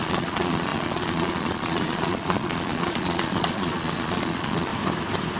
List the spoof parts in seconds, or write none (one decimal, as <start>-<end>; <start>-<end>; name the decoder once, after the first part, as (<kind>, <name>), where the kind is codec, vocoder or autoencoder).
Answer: 0.0-4.7 (vocoder, Vocos)